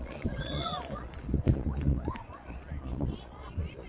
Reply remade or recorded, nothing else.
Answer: remade